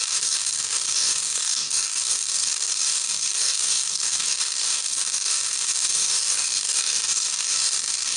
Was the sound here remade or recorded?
remade